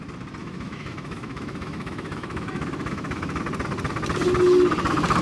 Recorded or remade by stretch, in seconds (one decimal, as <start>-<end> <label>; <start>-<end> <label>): 0.0-0.4 recorded; 0.4-3.4 remade; 3.4-5.2 recorded